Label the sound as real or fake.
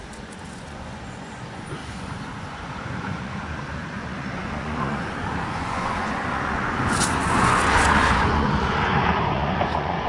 fake